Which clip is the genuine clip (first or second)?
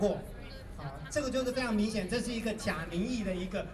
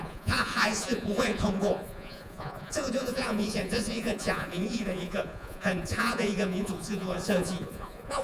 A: first